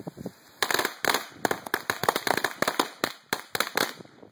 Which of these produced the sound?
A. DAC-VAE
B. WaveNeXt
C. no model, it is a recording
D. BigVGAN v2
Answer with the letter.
C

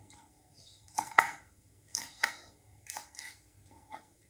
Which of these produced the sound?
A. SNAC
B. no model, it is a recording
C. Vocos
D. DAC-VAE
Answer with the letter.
A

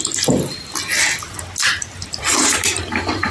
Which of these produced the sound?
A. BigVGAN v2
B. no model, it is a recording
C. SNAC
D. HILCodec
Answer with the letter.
B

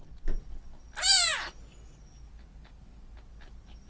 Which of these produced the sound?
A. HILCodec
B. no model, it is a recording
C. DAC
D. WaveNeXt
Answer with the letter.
B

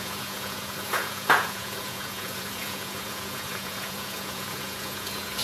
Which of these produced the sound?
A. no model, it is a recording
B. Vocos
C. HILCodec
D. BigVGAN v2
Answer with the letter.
B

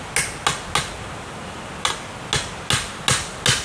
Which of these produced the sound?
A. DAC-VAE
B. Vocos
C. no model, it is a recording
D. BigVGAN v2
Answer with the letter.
C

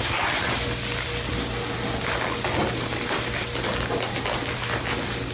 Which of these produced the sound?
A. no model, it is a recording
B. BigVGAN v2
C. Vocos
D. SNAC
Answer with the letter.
A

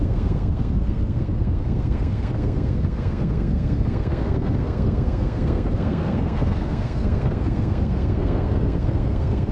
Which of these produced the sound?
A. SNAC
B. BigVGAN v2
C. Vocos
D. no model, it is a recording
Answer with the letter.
A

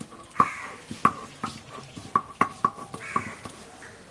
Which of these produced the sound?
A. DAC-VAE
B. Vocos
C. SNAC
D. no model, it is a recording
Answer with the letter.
D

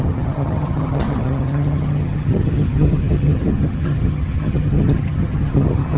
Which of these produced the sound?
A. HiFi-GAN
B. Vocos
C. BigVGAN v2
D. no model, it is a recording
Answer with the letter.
A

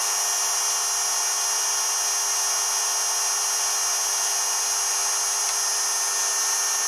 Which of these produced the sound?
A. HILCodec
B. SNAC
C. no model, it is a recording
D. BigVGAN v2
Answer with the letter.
C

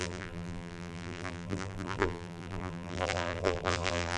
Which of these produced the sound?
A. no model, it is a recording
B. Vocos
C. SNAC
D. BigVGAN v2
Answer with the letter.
D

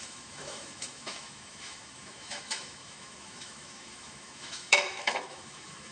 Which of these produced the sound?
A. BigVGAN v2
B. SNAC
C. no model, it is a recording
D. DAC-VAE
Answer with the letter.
D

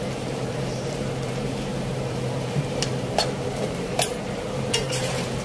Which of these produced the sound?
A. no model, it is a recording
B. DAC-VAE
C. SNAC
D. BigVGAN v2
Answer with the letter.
D